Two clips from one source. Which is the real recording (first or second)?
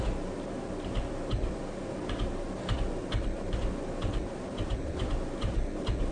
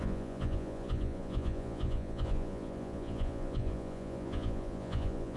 first